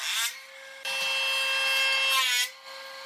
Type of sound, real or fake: real